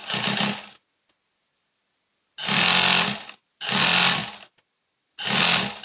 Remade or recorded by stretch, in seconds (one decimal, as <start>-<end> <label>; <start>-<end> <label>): 0.0-5.8 recorded